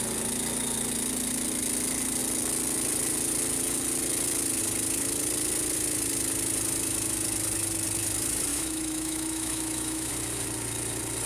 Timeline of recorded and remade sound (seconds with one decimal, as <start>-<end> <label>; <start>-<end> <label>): 0.0-8.5 recorded; 8.5-10.1 remade; 10.1-11.3 recorded